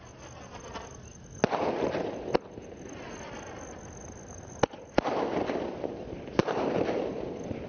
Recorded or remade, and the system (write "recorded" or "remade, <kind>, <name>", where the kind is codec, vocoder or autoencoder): recorded